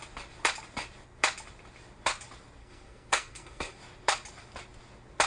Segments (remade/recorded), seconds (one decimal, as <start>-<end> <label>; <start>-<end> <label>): 0.0-2.6 recorded; 2.6-3.8 remade; 3.8-5.3 recorded